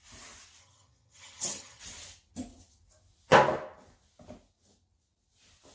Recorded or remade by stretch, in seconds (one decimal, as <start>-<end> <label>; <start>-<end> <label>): 0.0-0.6 recorded; 0.6-1.8 remade; 1.8-5.7 recorded